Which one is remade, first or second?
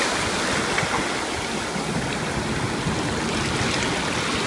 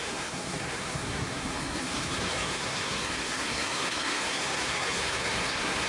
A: second